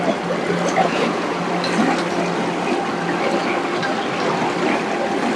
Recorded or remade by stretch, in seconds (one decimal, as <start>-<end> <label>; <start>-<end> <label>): 0.0-0.8 recorded; 0.8-1.4 remade; 1.4-5.4 recorded